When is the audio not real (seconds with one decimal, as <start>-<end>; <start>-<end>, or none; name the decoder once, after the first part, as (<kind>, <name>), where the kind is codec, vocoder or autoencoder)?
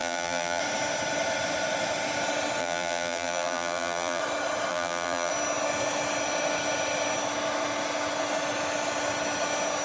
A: 0.0-0.6 (vocoder, BigVGAN v2); 2.6-4.2; 4.7-5.3